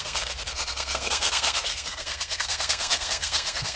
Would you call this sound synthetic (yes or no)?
yes